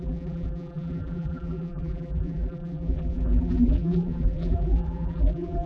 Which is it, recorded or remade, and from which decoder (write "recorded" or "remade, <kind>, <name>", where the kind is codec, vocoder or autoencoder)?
remade, vocoder, BigVGAN v2